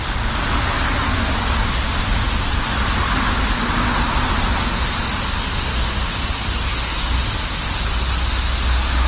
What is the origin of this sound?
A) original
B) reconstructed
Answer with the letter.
A